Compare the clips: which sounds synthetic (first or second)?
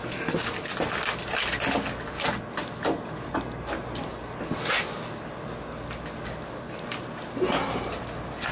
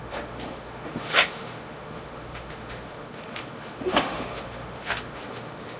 second